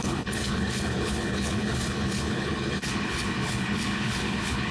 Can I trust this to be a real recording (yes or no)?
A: no